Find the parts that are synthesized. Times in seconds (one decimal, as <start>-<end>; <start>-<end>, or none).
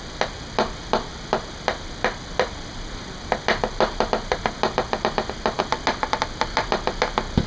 none